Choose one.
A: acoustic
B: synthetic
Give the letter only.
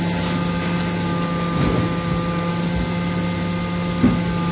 A